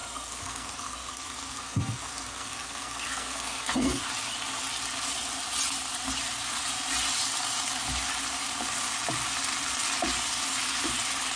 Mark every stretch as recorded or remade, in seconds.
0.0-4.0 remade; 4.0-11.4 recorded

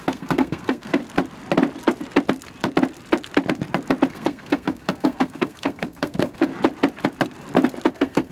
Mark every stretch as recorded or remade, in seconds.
0.0-1.0 remade; 1.0-4.1 recorded; 4.1-6.5 remade; 6.5-7.9 recorded; 7.9-8.3 remade

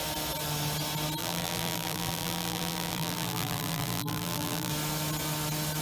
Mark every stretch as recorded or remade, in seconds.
0.0-1.2 recorded; 1.2-4.7 remade; 4.7-5.8 recorded

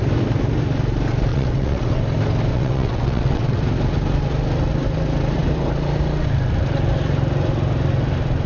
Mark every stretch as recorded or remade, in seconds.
0.0-1.3 recorded; 1.3-2.0 remade; 2.0-2.5 recorded; 2.5-3.6 remade; 3.6-8.5 recorded

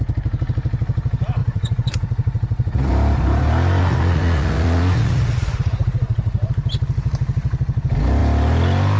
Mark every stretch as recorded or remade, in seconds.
0.0-1.4 recorded; 1.4-2.9 remade; 2.9-3.8 recorded; 3.8-6.5 remade; 6.5-9.0 recorded

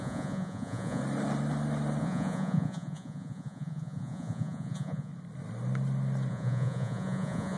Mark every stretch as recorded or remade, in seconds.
0.0-1.0 remade; 1.0-2.0 recorded; 2.0-5.1 remade; 5.1-6.3 recorded; 6.3-7.6 remade

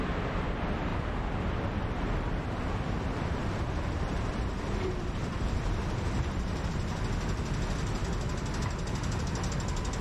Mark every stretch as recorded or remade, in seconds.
0.0-3.4 recorded; 3.4-6.7 remade; 6.7-10.0 recorded